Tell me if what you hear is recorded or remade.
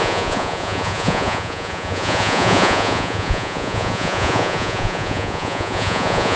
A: remade